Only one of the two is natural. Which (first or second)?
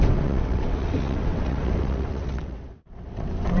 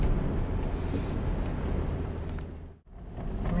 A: second